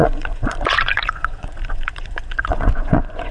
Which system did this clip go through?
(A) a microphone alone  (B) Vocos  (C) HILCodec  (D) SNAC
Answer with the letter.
B